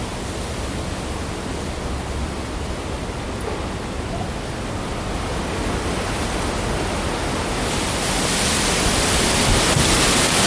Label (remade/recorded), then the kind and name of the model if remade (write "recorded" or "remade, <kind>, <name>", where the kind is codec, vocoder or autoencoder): recorded